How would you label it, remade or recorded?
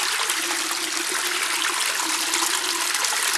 recorded